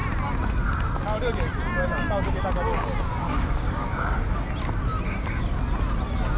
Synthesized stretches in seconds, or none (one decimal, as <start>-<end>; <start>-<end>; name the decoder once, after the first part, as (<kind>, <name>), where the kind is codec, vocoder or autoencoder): 3.1-4.2 (codec, DAC)